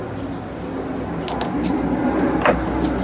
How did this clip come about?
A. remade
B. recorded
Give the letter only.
B